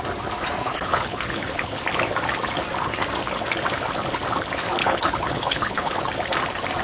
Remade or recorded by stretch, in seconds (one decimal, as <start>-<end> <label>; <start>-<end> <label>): 0.0-0.7 recorded; 0.7-1.8 remade; 1.8-4.8 recorded; 4.8-6.0 remade; 6.0-6.8 recorded